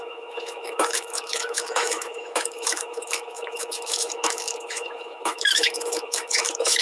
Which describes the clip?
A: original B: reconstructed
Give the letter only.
B